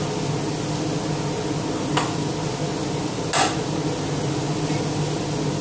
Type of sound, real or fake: real